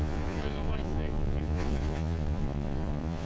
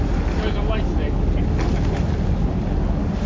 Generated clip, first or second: first